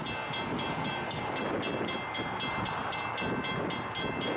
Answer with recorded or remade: recorded